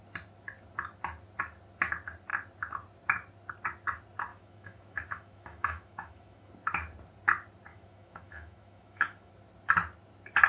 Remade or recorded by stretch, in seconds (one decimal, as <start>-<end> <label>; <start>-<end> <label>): 0.0-4.3 recorded; 4.3-6.5 remade; 6.5-7.7 recorded; 7.7-9.3 remade; 9.3-10.5 recorded